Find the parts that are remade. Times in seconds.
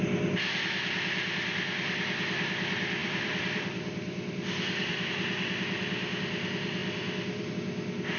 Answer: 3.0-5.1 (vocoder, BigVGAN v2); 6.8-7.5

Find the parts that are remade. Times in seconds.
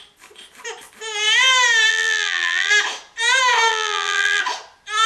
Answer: 1.9-2.7 (vocoder, BigVGAN v2); 3.7-4.4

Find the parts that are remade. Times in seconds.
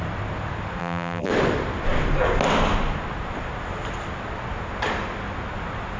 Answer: 0.8-1.3 (vocoder, BigVGAN v2)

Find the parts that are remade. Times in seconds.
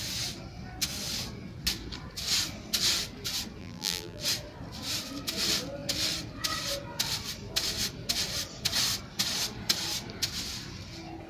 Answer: 3.6-4.2 (vocoder, BigVGAN v2)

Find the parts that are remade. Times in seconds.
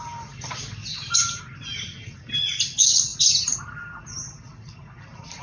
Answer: 0.8-1.4 (vocoder, BigVGAN v2)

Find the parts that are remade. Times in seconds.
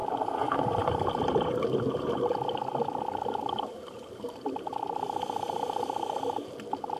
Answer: none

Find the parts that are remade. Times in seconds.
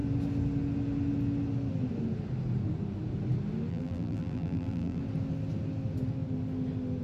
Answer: 3.7-5.0 (vocoder, BigVGAN v2)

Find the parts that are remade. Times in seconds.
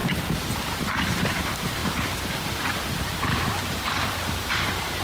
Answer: 1.4-5.0 (vocoder, BigVGAN v2)